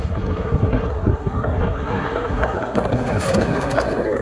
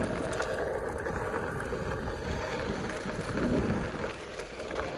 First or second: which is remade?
first